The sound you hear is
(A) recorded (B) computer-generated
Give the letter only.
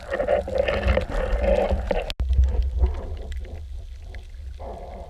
A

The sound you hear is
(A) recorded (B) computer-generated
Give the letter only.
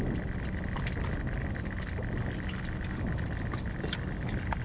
A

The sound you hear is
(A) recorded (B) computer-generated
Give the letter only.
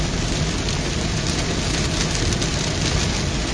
A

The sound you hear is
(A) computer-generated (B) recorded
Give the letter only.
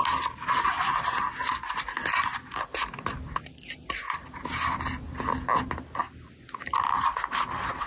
B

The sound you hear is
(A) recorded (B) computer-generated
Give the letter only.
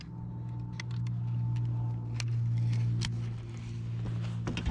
A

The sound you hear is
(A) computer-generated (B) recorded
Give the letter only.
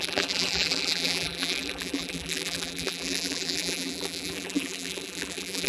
A